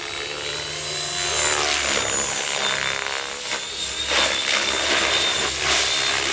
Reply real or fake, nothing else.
real